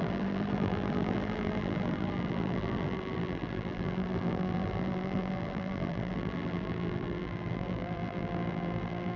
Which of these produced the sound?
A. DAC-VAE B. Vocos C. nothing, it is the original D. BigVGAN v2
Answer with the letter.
D